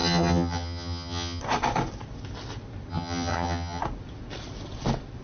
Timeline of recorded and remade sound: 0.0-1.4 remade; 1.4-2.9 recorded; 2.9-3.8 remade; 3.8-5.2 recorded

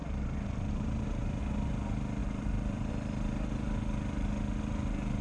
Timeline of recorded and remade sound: 0.0-1.4 remade; 1.4-2.2 recorded; 2.2-2.9 remade; 2.9-5.2 recorded

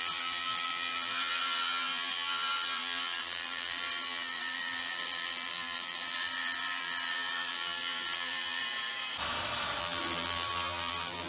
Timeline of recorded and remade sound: 0.0-8.6 remade; 8.6-9.8 recorded; 9.8-11.3 remade

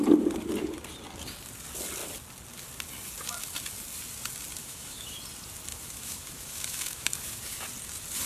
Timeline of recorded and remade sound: 0.0-4.6 recorded; 4.6-5.2 remade; 5.2-5.7 recorded; 5.7-7.4 remade; 7.4-8.3 recorded